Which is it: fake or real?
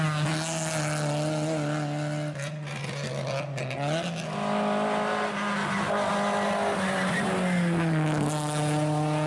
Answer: real